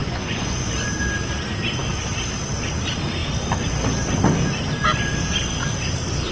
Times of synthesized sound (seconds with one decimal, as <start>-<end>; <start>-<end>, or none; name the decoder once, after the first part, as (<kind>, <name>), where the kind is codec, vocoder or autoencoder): 0.0-0.7 (vocoder, Vocos)